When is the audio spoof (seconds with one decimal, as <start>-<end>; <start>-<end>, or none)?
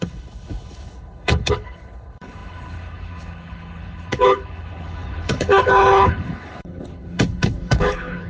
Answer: 0.0-8.3